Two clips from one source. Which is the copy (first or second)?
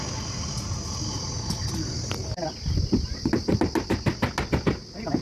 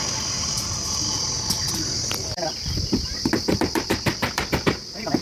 second